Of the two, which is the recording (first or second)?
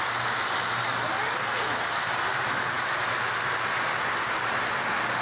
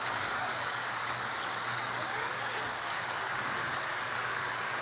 first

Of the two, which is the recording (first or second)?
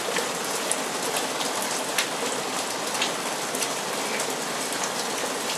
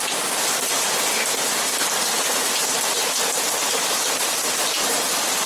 first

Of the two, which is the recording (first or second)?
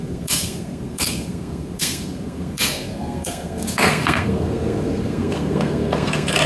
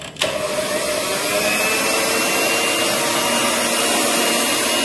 second